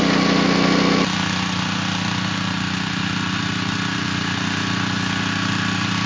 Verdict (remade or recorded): recorded